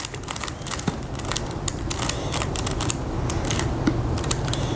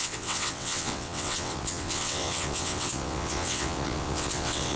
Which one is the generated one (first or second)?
second